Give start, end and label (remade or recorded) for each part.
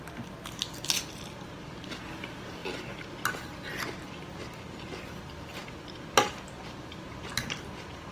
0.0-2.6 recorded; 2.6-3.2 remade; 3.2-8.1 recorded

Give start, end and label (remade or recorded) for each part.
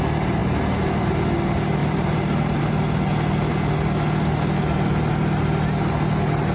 0.0-0.4 recorded; 0.4-1.2 remade; 1.2-1.8 recorded; 1.8-2.6 remade; 2.6-6.5 recorded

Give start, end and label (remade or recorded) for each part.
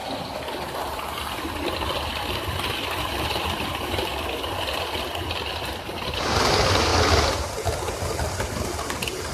0.0-3.0 recorded; 3.0-4.1 remade; 4.1-5.6 recorded; 5.6-6.9 remade; 6.9-7.9 recorded; 7.9-9.3 remade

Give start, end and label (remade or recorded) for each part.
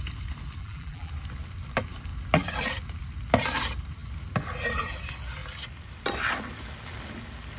0.0-0.6 recorded; 0.6-1.1 remade; 1.1-7.6 recorded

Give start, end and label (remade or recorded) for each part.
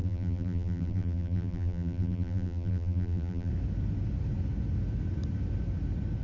0.0-3.5 remade; 3.5-6.2 recorded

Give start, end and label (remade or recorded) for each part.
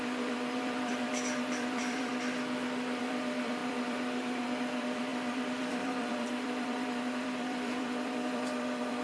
0.0-2.1 remade; 2.1-3.0 recorded; 3.0-9.0 remade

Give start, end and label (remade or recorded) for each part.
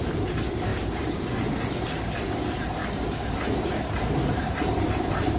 0.0-2.8 remade; 2.8-3.5 recorded; 3.5-5.4 remade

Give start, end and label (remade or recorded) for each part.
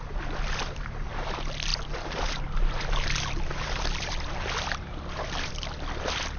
0.0-1.7 recorded; 1.7-5.5 remade; 5.5-6.4 recorded